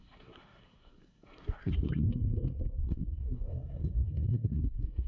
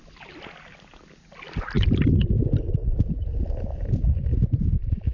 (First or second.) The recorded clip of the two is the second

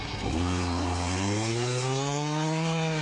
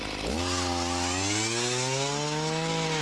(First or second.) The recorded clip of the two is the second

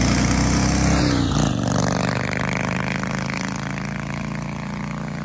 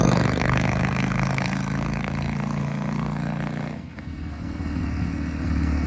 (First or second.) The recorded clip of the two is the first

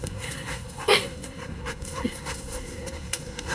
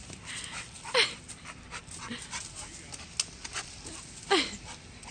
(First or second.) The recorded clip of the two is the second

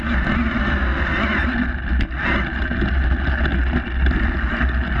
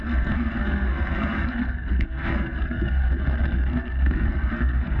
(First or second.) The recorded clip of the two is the first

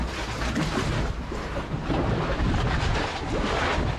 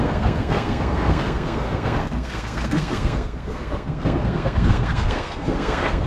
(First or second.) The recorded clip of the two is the first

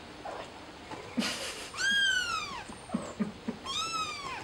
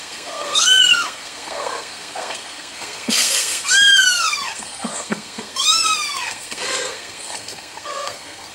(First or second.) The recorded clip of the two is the first